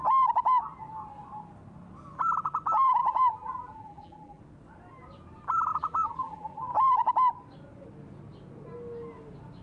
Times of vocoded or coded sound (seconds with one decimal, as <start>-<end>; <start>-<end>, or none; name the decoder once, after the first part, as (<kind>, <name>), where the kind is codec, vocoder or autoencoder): 3.0-4.4 (vocoder, BigVGAN v2); 5.7-6.6

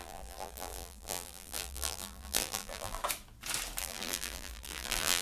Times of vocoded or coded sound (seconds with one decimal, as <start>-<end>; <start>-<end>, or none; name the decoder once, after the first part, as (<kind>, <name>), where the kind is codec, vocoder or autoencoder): 0.0-3.0 (vocoder, BigVGAN v2); 3.8-5.2

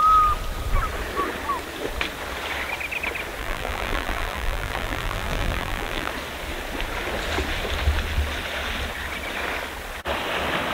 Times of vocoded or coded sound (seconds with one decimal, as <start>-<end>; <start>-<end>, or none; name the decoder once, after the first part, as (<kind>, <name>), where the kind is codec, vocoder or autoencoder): 3.4-6.1 (vocoder, BigVGAN v2)

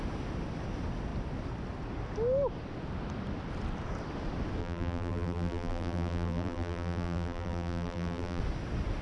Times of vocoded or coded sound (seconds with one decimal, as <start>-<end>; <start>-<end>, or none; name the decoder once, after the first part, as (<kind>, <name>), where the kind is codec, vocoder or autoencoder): 4.6-8.4 (vocoder, BigVGAN v2)